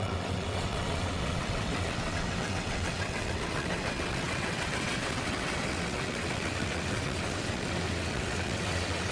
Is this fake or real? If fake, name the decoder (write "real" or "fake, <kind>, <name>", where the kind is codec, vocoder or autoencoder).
fake, vocoder, WaveNeXt